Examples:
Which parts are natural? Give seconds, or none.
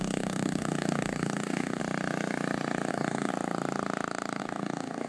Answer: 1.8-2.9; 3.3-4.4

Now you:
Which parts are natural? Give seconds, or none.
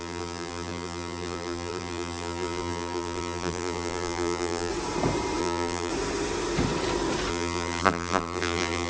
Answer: 4.7-5.4; 5.9-7.3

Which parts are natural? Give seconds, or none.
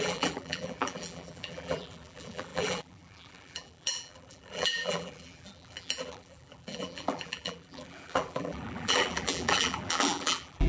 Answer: none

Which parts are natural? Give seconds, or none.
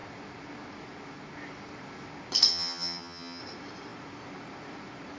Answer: 0.0-2.5; 3.4-5.2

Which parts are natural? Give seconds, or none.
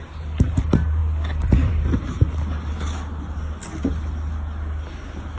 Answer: 0.0-5.4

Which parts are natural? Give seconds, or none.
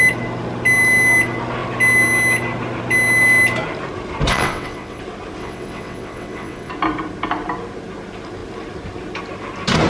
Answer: 0.0-4.3; 5.0-5.4; 6.7-9.9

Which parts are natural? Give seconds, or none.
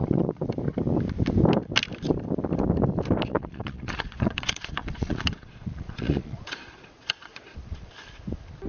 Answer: 0.5-3.3; 7.9-8.7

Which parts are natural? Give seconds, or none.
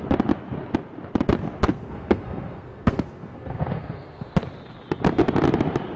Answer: 0.0-1.7; 4.3-6.0